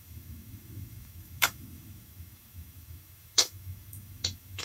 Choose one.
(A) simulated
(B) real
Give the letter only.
A